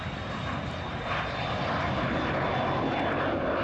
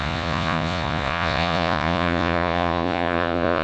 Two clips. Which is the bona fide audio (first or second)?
first